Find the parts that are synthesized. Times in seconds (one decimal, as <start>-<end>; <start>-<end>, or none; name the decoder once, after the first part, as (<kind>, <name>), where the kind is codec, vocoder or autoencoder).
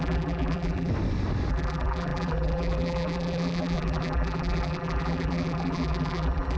0.0-0.9 (vocoder, BigVGAN v2); 1.5-6.6